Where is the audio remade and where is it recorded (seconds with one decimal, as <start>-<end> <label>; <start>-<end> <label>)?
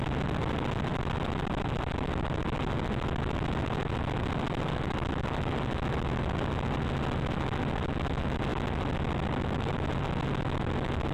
0.0-11.1 recorded